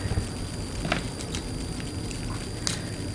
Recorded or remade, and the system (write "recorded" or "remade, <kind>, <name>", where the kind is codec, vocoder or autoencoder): recorded